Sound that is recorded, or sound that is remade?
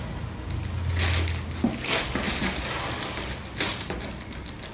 recorded